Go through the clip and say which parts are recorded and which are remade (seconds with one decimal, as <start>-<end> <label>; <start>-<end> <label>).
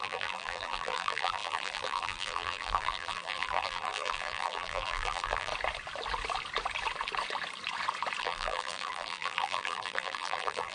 0.0-5.5 remade; 5.5-8.2 recorded; 8.2-10.7 remade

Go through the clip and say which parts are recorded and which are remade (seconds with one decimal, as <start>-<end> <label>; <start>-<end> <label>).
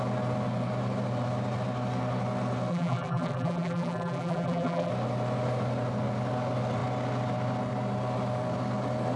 0.0-2.7 recorded; 2.7-4.9 remade; 4.9-9.2 recorded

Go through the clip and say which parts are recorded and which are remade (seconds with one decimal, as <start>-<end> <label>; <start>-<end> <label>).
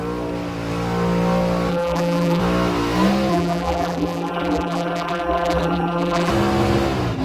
0.0-1.7 recorded; 1.7-2.4 remade; 2.4-3.3 recorded; 3.3-6.3 remade; 6.3-7.2 recorded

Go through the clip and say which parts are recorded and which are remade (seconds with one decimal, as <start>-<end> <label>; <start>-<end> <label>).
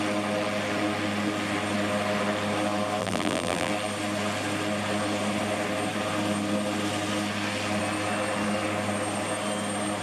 0.0-3.0 recorded; 3.0-3.7 remade; 3.7-10.0 recorded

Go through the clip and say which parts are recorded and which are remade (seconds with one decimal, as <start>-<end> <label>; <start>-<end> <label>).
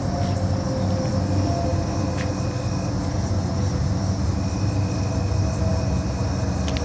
0.0-5.7 recorded; 5.7-6.2 remade; 6.2-6.8 recorded